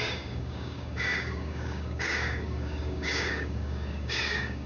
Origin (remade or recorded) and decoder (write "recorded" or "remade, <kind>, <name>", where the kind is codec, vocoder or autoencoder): remade, codec, DAC